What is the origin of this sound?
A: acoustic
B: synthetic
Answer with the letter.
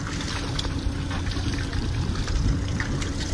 A